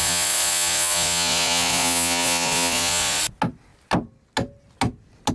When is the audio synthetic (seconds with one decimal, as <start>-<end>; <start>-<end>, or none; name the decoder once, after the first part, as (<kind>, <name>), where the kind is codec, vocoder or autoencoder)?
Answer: 0.0-3.2 (vocoder, Vocos)